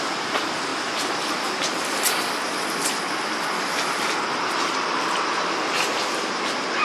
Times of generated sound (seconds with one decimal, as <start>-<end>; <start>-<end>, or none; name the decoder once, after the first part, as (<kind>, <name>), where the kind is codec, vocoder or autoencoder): none